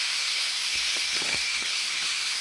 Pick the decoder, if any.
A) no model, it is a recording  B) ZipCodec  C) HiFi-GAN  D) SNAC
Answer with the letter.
D